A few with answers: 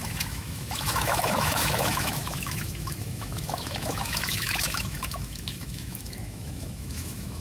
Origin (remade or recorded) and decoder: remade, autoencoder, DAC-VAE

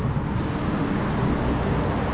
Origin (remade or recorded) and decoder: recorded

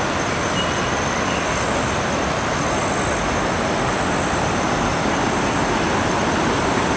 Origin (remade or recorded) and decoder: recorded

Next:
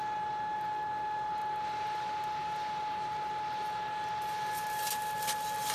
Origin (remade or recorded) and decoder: recorded